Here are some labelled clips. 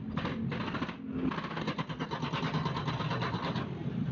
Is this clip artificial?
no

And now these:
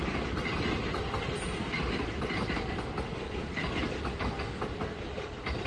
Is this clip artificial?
no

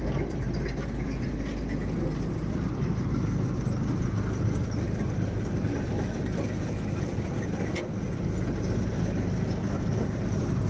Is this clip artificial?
no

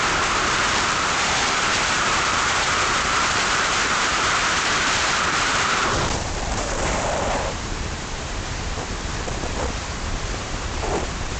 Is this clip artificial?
yes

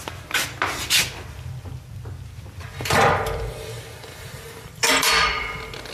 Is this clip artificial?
yes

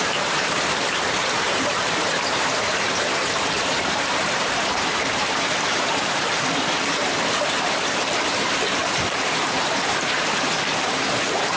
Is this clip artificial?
yes